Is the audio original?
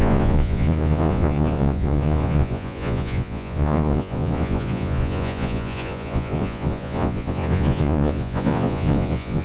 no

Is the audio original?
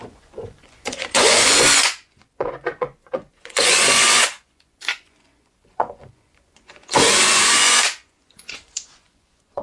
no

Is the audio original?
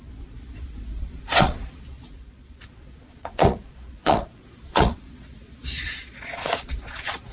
no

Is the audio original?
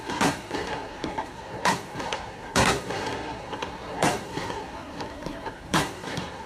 no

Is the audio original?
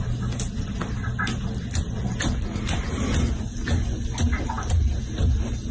yes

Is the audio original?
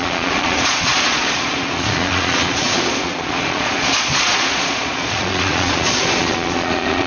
no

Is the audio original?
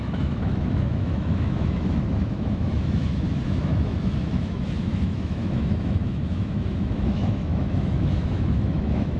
no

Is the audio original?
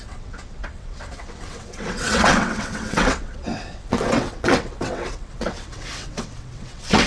no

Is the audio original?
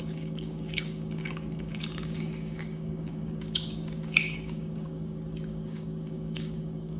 no